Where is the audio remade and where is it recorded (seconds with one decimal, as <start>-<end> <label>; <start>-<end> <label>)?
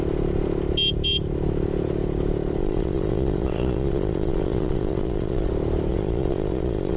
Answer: 0.0-2.6 recorded; 2.6-5.5 remade; 5.5-5.9 recorded; 5.9-7.0 remade